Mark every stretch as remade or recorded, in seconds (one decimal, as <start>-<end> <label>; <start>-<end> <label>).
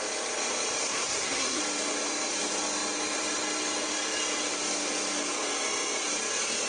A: 0.0-0.8 recorded; 0.8-1.6 remade; 1.6-6.7 recorded